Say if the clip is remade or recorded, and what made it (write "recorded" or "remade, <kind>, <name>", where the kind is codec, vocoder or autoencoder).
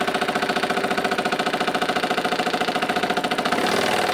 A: recorded